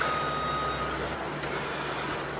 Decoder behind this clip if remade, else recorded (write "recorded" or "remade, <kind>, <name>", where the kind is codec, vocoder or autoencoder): recorded